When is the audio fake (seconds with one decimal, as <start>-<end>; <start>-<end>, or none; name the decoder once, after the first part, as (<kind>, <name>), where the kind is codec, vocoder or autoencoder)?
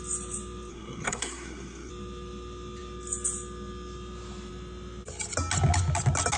0.7-1.9 (codec, SNAC)